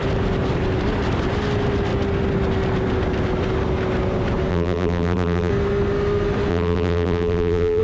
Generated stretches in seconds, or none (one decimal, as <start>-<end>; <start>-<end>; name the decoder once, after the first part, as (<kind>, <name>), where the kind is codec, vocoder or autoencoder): 4.5-5.5 (vocoder, BigVGAN v2); 6.5-7.8